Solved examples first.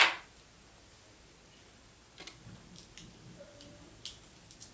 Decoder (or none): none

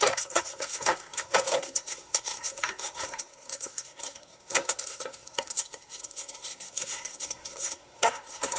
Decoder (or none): codec, SNAC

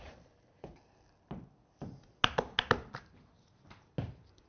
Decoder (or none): none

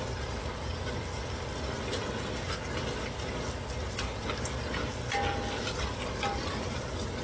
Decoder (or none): none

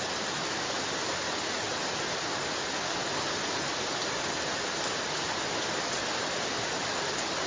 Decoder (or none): none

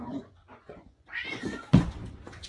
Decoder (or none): vocoder, Vocos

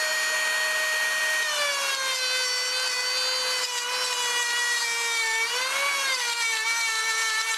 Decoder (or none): none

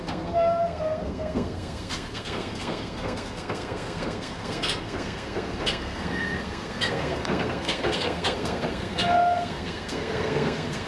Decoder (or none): codec, SNAC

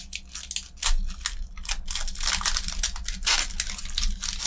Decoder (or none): none